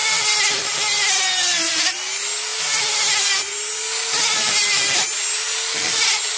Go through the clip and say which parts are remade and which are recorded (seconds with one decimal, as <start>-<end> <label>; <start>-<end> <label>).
0.0-6.4 recorded